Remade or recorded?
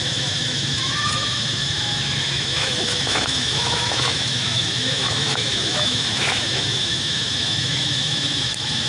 remade